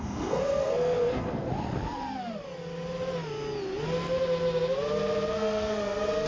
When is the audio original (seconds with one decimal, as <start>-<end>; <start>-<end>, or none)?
1.5-5.3